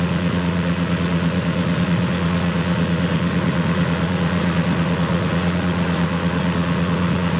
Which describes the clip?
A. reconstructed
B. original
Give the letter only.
A